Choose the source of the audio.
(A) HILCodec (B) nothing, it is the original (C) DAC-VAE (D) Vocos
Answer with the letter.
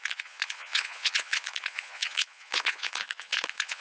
D